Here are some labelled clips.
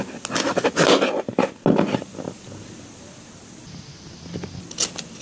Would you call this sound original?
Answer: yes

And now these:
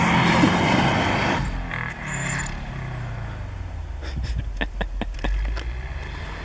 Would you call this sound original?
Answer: yes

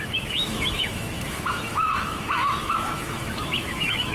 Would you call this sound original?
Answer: no